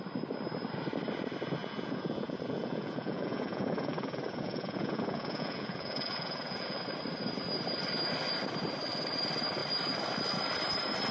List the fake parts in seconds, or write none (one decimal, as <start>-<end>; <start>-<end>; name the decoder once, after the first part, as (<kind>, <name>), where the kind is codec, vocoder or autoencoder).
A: 1.6-6.8 (vocoder, Vocos)